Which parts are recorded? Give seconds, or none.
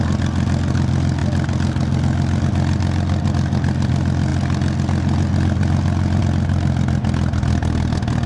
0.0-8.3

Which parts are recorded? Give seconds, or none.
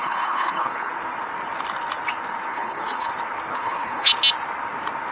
0.9-2.5; 3.1-3.5; 4.1-5.1